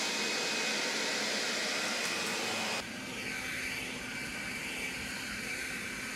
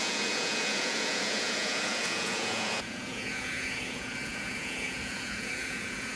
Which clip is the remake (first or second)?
second